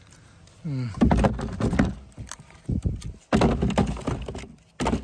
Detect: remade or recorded recorded